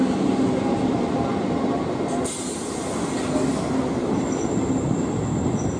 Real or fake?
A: real